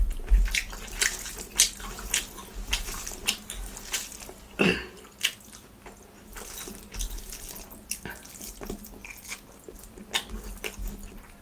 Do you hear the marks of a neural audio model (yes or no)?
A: no